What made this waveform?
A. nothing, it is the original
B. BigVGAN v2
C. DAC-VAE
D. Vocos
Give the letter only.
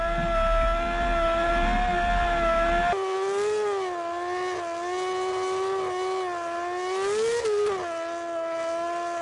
A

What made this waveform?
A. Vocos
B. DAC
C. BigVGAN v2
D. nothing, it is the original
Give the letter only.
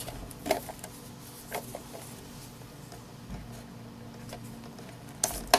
D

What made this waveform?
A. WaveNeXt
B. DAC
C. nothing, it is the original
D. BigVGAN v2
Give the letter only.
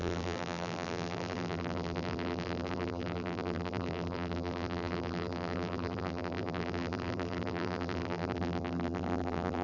D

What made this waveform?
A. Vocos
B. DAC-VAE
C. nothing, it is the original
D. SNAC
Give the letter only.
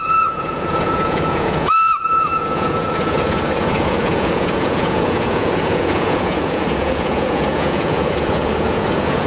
A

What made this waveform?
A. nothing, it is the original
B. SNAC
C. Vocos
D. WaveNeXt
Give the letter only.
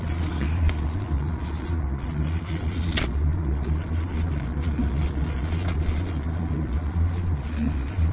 C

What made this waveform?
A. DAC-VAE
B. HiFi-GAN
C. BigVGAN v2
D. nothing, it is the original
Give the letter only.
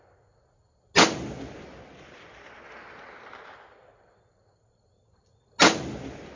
D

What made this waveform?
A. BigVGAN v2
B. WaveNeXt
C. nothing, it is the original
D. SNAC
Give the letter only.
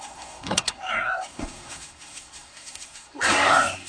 D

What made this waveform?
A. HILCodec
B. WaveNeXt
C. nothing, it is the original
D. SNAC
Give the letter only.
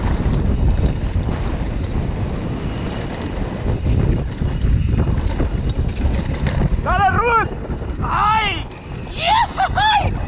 C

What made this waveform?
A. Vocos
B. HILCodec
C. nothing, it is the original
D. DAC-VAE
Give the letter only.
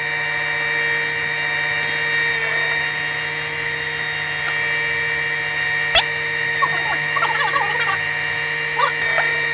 C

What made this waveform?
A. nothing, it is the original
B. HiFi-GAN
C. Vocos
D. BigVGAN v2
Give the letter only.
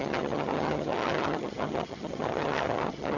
B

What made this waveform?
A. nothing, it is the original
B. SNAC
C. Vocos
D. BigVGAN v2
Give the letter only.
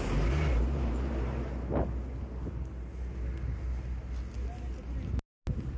A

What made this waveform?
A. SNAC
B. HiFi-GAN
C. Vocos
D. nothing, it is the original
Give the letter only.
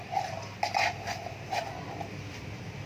D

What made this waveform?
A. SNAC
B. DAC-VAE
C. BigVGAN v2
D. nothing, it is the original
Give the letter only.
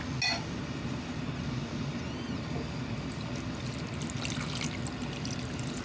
D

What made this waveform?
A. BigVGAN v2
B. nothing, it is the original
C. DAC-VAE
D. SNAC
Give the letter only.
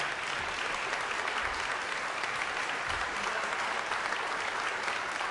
B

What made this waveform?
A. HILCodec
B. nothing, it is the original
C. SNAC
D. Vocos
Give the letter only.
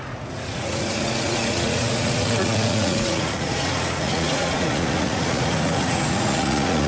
D